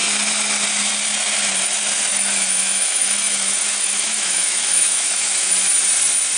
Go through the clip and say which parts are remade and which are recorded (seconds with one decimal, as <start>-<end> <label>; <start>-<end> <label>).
0.0-2.1 recorded; 2.1-5.5 remade; 5.5-6.4 recorded